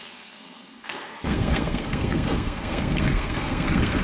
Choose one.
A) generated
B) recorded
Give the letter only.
A